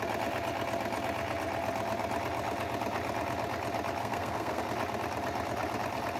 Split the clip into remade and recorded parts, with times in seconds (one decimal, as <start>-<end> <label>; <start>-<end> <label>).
0.0-4.0 recorded; 4.0-4.6 remade; 4.6-6.2 recorded